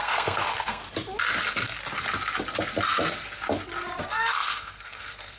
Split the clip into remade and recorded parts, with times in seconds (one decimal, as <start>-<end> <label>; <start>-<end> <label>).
0.0-0.8 remade; 0.8-4.0 recorded; 4.0-5.4 remade

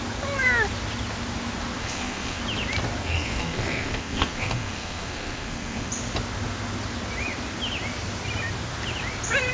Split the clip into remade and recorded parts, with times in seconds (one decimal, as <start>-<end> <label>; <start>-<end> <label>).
0.0-1.8 recorded; 1.8-2.4 remade; 2.4-3.0 recorded; 3.0-5.9 remade; 5.9-9.5 recorded

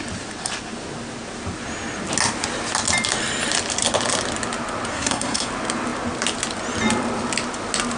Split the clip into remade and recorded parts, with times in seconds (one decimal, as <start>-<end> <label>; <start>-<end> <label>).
0.0-4.9 recorded; 4.9-5.5 remade; 5.5-8.0 recorded

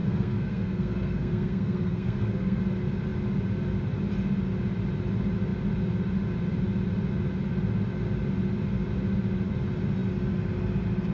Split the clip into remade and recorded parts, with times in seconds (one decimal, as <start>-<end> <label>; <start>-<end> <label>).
0.0-2.6 remade; 2.6-11.1 recorded